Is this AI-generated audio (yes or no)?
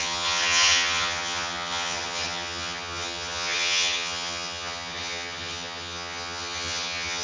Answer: yes